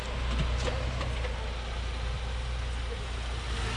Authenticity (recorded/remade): recorded